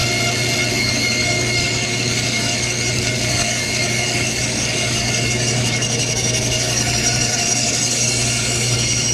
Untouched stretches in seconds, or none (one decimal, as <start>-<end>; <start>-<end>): 0.0-0.7